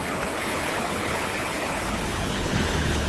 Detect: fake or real fake